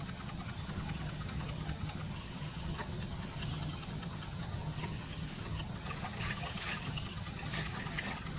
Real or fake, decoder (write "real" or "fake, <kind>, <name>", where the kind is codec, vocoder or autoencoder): fake, vocoder, HiFi-GAN